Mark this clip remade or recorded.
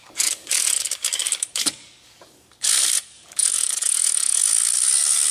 remade